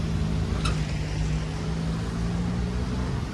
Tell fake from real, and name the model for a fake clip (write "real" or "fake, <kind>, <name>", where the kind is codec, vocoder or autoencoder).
real